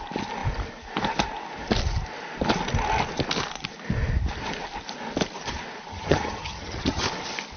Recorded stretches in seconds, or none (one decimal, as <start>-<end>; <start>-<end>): 0.0-5.9; 7.0-7.6